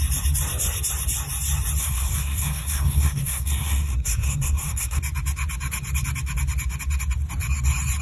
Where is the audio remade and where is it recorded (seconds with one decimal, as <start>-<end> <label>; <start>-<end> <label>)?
0.0-1.8 recorded; 1.8-5.0 remade; 5.0-8.0 recorded